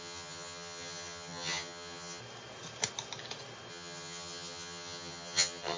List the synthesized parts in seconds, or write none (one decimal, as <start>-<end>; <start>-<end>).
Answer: 0.0-2.2; 3.7-5.8